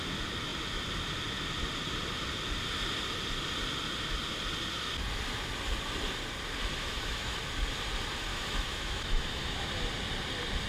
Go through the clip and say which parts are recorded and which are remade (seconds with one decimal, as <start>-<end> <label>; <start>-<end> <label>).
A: 0.0-6.8 recorded; 6.8-7.4 remade; 7.4-8.3 recorded; 8.3-9.7 remade; 9.7-10.7 recorded